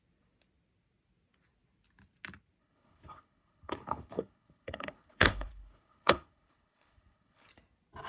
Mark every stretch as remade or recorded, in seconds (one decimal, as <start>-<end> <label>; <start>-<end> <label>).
0.0-2.6 recorded; 2.6-7.5 remade; 7.5-8.1 recorded